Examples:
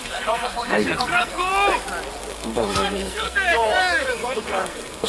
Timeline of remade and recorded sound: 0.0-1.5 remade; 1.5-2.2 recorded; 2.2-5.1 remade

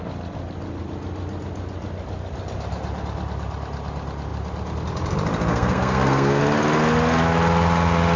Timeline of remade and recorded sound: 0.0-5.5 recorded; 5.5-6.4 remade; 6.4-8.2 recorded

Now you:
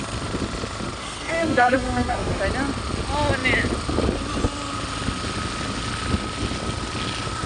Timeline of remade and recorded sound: 0.0-1.0 recorded; 1.0-2.4 remade; 2.4-7.5 recorded